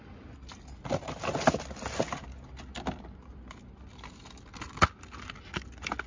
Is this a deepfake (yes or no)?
no